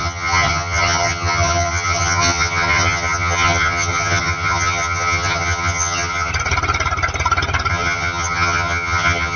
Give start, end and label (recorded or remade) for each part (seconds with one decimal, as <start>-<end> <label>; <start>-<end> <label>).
0.0-6.3 remade; 6.3-7.7 recorded; 7.7-9.4 remade